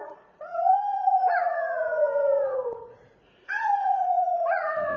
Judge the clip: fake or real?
fake